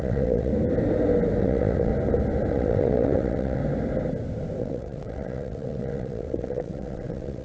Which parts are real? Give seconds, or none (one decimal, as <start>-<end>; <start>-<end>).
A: 0.5-1.4; 1.9-2.5; 3.6-4.6